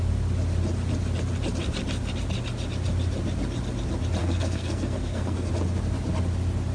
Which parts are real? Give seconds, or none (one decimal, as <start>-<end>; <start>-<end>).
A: 0.0-4.2; 5.5-6.7

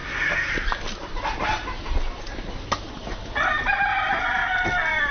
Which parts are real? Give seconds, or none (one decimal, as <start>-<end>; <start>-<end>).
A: 0.5-5.1